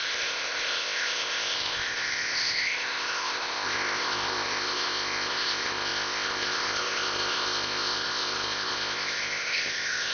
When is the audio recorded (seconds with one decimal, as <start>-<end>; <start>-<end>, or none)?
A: none